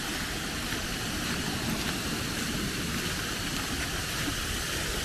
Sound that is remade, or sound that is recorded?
remade